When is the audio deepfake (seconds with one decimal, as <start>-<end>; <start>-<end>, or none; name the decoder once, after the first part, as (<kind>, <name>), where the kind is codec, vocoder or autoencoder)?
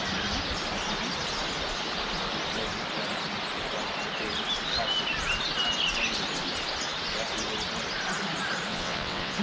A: 8.7-9.4 (vocoder, WaveNeXt)